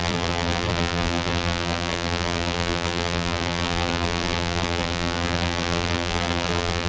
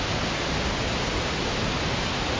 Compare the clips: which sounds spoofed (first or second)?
first